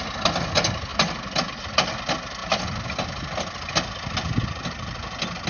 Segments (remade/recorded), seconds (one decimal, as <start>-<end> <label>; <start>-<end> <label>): 0.0-5.5 recorded